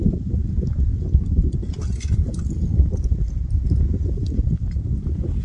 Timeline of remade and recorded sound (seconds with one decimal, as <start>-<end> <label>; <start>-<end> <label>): 0.0-5.4 recorded